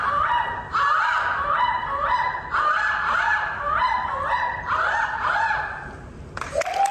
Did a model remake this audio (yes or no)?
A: no